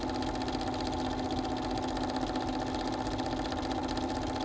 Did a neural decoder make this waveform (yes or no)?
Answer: no